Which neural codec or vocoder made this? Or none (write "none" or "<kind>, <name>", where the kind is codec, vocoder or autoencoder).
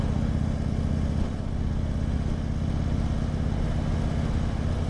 none